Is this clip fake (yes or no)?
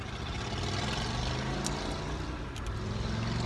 no